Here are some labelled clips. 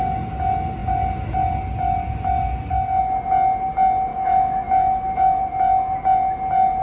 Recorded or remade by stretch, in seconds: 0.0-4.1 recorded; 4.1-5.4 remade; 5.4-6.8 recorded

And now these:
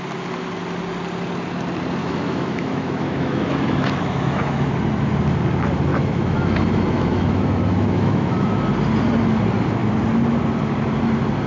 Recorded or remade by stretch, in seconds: 0.0-2.0 recorded; 2.0-4.7 remade; 4.7-5.9 recorded; 5.9-8.6 remade; 8.6-11.5 recorded

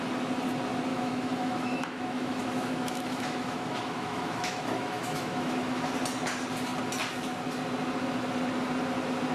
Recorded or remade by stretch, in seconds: 0.0-0.9 recorded; 0.9-5.9 remade; 5.9-9.3 recorded